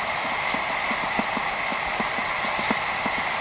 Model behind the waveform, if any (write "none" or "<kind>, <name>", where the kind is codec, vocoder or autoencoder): none